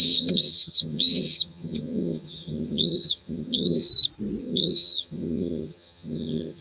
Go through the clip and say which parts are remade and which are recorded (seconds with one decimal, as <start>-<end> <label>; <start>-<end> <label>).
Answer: 0.0-3.9 remade; 3.9-4.4 recorded; 4.4-6.6 remade